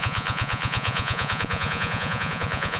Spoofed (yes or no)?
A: yes